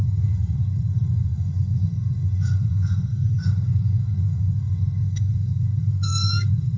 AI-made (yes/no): yes